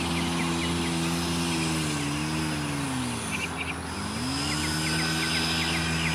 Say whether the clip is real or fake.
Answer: real